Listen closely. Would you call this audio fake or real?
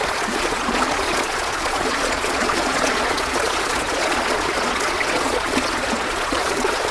fake